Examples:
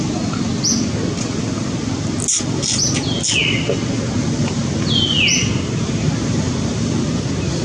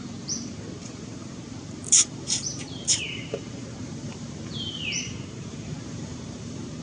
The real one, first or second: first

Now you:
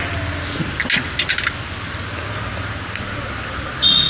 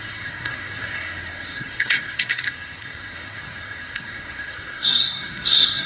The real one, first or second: first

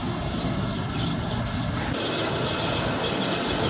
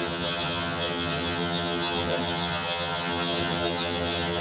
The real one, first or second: first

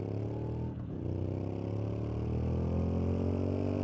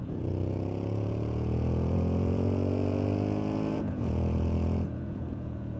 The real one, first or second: first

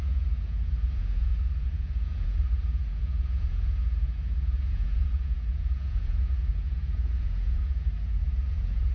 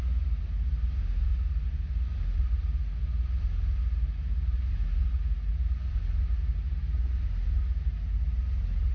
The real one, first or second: second